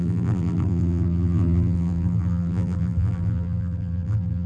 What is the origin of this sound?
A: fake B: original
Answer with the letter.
A